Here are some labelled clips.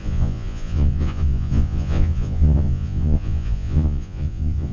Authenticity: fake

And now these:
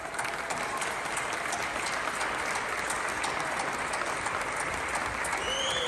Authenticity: real